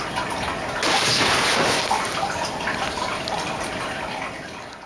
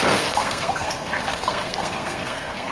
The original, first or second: first